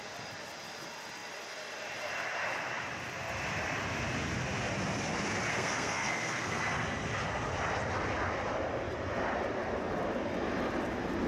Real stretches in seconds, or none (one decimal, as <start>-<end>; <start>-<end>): 0.0-5.5; 6.6-11.3